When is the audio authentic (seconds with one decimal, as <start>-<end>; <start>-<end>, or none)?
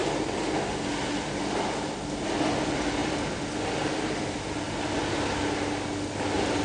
0.0-6.6